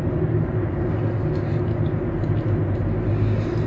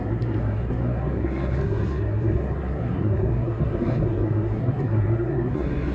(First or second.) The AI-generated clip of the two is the second